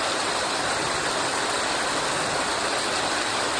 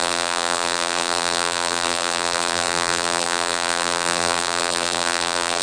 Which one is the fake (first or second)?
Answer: second